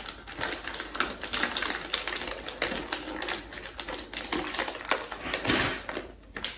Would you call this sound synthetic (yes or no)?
no